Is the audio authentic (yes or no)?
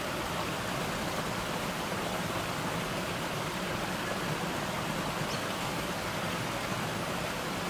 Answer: yes